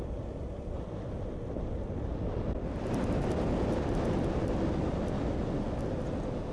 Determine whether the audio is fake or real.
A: real